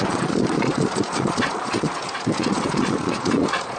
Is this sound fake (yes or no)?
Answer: yes